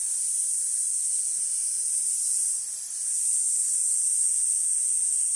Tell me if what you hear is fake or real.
real